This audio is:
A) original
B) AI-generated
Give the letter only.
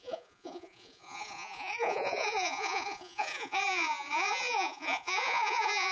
B